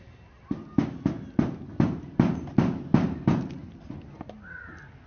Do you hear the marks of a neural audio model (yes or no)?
no